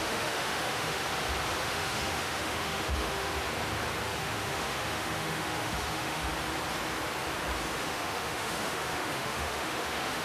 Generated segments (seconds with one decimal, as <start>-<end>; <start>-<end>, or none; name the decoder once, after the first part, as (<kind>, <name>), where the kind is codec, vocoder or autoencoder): 0.0-1.0 (autoencoder, DAC-VAE); 1.6-3.3; 4.2-6.3; 7.7-10.2